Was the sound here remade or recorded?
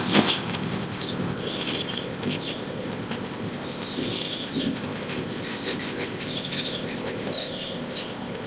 remade